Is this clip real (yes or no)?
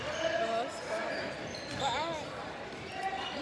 yes